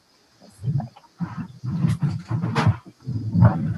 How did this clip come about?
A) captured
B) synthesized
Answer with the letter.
A